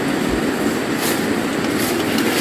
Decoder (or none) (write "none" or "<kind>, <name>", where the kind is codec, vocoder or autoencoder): none